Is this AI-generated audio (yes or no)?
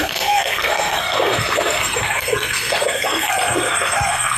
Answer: yes